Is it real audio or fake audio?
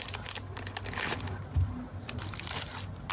real